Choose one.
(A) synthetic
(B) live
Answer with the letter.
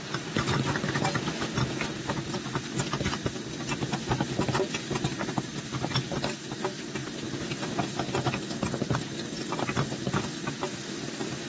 B